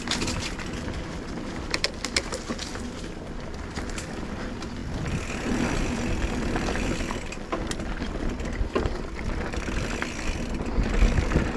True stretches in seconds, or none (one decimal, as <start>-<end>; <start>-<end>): 0.0-11.6